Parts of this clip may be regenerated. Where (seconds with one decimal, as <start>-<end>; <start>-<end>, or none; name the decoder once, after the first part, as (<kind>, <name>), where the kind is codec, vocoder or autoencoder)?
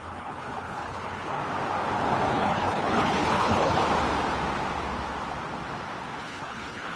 0.0-1.4 (codec, HILCodec); 2.3-3.8; 6.2-7.0